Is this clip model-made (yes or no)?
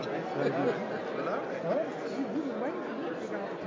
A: no